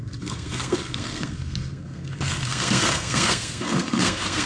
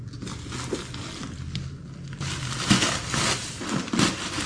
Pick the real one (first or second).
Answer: second